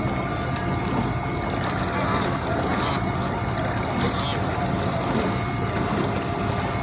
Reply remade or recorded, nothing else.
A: recorded